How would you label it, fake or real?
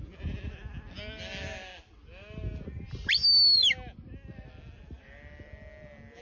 real